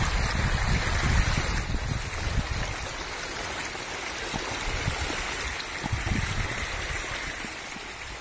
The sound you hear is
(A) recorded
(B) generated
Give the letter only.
A